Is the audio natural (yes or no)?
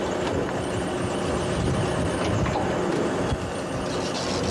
yes